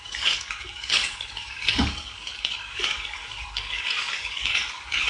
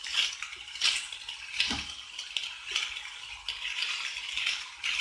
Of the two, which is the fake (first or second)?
first